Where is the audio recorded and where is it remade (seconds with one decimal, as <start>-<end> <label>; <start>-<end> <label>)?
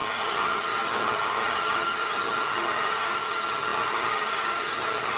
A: 0.0-5.2 remade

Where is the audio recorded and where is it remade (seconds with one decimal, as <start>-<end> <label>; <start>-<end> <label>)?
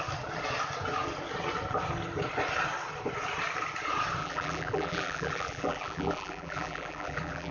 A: 0.0-4.2 recorded; 4.2-7.5 remade